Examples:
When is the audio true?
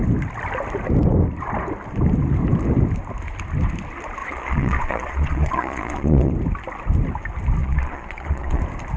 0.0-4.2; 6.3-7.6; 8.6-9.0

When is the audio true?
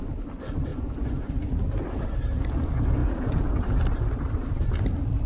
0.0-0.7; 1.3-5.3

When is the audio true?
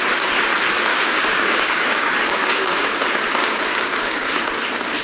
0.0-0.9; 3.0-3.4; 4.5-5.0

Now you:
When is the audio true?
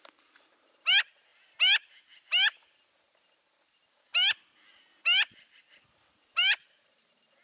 0.0-7.4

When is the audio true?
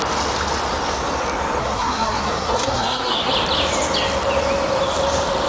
0.0-1.6; 3.3-5.5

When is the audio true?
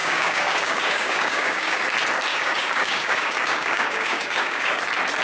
1.8-2.3; 4.8-5.2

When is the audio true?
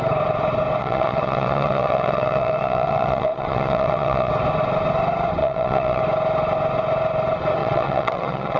0.0-0.8; 4.3-5.4; 6.0-7.6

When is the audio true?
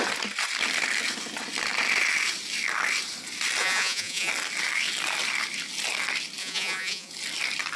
0.0-3.6; 4.3-6.4; 7.1-7.8